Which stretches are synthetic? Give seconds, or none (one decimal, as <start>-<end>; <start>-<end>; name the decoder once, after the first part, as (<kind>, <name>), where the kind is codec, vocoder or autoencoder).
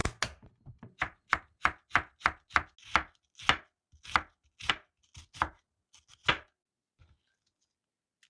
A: none